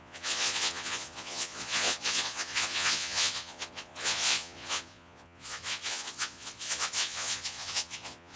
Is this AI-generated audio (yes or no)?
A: yes